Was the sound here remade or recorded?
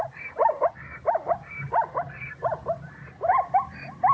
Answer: remade